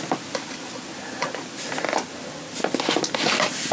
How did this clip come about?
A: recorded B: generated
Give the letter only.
A